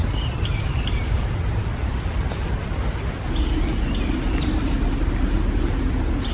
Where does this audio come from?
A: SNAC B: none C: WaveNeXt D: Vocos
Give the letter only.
B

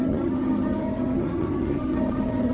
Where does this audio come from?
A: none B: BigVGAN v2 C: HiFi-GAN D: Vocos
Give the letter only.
C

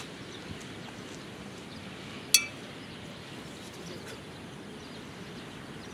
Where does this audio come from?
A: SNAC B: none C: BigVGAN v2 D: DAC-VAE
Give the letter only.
B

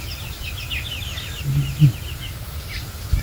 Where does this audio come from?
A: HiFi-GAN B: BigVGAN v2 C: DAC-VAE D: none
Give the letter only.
D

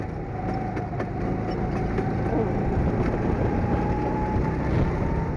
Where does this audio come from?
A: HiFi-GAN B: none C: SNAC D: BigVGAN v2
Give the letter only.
B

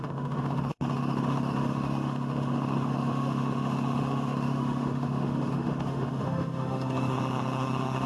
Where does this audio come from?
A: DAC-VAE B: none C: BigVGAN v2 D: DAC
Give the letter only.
A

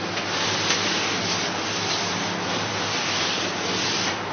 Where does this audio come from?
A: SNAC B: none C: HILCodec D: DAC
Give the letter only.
B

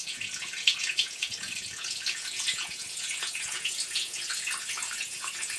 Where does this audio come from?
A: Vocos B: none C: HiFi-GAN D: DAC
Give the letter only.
A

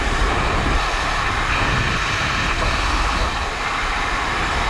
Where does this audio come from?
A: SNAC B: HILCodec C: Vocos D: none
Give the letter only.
D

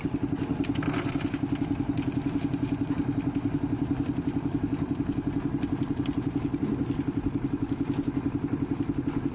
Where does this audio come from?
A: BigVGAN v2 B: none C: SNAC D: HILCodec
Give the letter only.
B